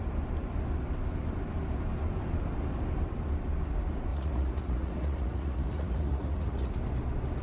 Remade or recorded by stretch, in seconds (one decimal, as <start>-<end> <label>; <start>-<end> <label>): 0.0-4.1 recorded; 4.1-6.7 remade; 6.7-7.4 recorded